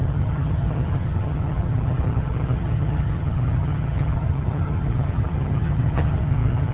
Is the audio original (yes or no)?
no